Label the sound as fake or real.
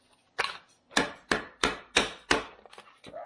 real